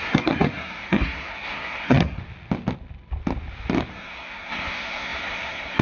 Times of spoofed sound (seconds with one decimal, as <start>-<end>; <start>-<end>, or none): 0.0-2.2; 3.9-5.8